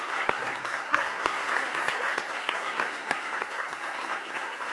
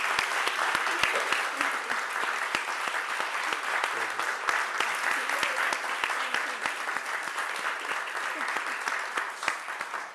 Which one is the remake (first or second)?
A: first